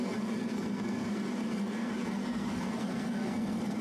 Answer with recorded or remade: remade